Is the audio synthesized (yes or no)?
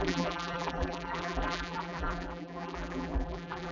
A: yes